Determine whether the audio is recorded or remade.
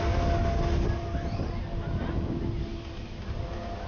recorded